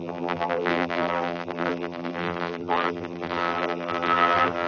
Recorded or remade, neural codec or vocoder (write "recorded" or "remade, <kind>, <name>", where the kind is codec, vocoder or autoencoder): remade, vocoder, BigVGAN v2